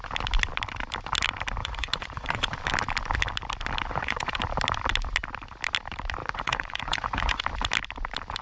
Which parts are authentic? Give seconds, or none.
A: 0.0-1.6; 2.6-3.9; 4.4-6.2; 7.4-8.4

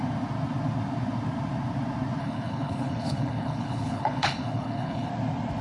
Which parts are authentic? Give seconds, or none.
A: 0.0-2.2; 5.1-5.6

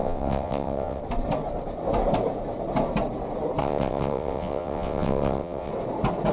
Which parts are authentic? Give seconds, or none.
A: 1.0-3.6; 5.7-6.3

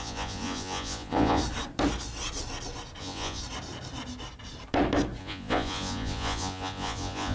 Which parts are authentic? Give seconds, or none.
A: 1.4-3.0; 3.4-5.2

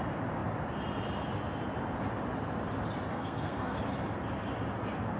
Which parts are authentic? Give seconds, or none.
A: 0.0-3.1; 3.8-5.2